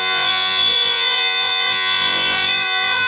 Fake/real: fake